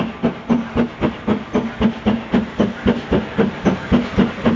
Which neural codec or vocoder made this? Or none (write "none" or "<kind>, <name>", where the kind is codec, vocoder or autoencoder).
none